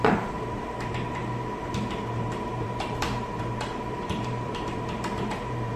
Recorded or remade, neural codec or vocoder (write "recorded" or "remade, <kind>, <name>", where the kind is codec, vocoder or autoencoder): remade, vocoder, BigVGAN v2